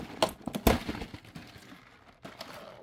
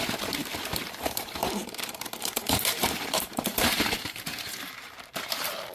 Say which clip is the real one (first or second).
first